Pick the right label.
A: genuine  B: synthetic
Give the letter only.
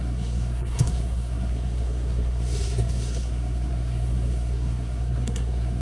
B